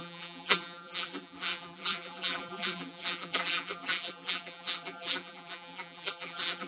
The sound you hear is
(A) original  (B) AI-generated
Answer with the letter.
B